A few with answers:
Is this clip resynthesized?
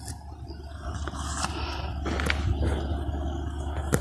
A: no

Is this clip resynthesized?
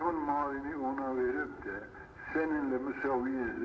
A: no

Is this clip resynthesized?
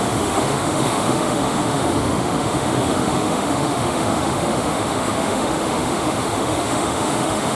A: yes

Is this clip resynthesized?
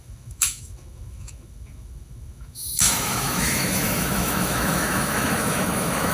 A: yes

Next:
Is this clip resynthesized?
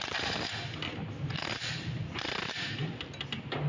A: no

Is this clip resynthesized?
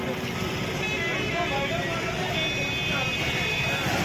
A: no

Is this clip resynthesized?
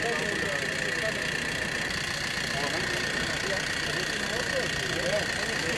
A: no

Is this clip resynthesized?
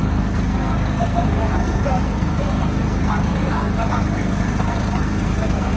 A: yes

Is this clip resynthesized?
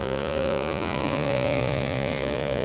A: yes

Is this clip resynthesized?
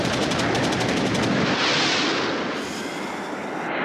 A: no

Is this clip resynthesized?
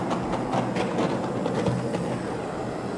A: no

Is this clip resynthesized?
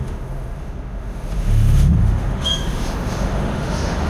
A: yes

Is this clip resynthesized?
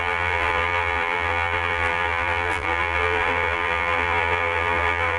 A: yes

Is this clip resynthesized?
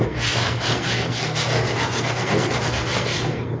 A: yes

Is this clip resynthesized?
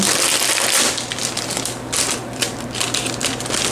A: no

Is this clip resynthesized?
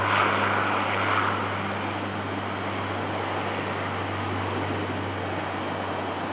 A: no